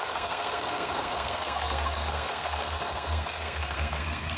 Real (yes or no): no